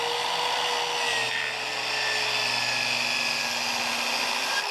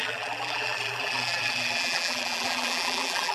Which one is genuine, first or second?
first